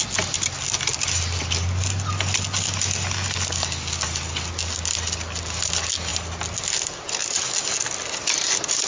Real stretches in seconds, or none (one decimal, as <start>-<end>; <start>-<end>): 0.0-8.9